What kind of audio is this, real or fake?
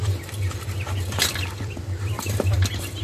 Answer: fake